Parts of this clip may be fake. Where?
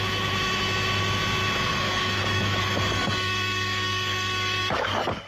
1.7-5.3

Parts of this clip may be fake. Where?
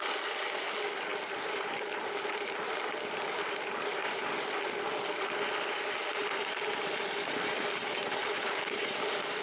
none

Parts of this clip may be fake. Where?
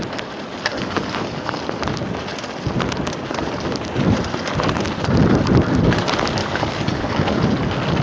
0.7-1.6; 6.4-7.4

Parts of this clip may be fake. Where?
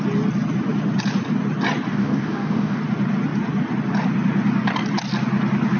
1.9-2.8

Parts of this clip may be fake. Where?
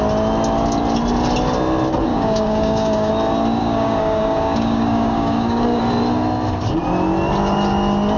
2.1-3.1; 3.6-5.8